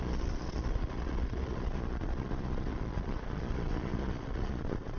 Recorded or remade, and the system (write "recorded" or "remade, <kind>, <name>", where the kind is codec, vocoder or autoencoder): remade, vocoder, Vocos